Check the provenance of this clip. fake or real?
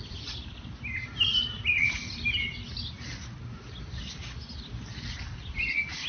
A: real